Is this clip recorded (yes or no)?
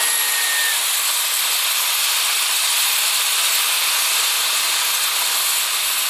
yes